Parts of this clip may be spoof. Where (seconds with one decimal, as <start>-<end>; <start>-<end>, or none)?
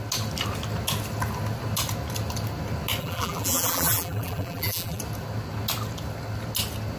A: 3.0-5.0